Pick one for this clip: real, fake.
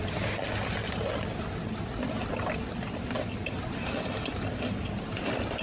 real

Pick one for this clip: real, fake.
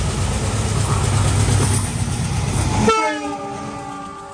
real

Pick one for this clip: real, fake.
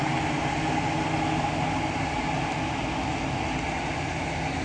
real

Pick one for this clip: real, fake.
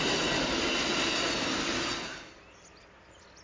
real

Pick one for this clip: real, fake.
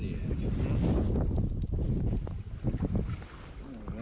real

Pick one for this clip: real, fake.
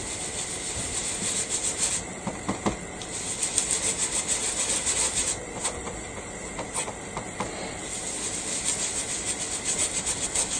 real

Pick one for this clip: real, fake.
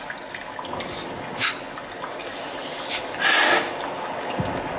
real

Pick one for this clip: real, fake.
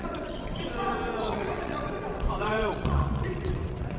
fake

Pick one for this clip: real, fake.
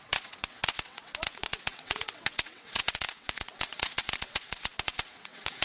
fake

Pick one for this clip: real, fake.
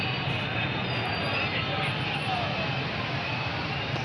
real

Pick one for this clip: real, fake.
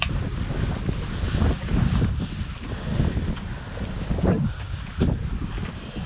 real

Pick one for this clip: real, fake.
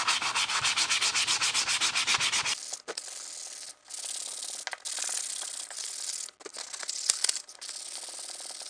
real